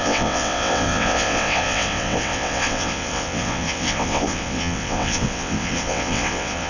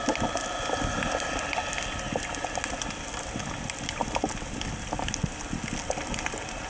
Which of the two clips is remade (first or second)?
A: first